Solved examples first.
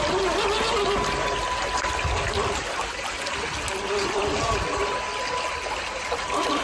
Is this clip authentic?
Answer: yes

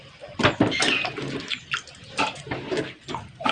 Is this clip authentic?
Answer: no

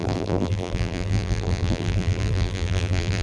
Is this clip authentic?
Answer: no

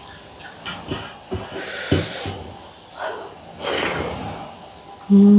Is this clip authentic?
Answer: yes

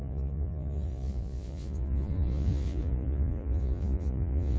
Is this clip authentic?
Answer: no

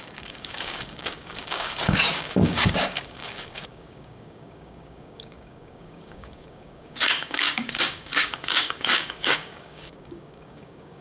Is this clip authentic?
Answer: no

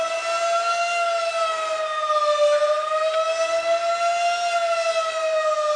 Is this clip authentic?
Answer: yes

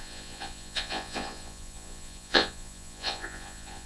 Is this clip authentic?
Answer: no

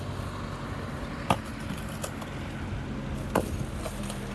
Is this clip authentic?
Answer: yes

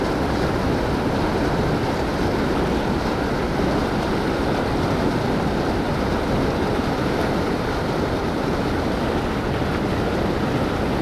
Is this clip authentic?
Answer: yes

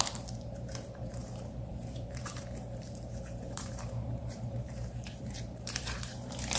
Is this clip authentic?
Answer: no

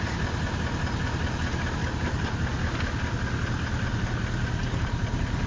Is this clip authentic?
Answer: yes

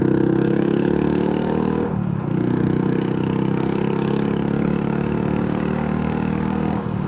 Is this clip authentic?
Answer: no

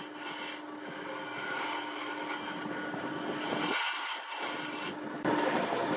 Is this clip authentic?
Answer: yes